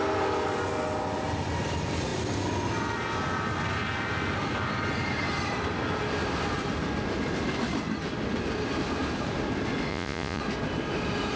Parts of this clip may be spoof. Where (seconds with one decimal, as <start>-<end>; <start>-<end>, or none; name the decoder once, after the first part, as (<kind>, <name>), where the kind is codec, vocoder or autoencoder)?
9.9-10.4 (vocoder, Vocos)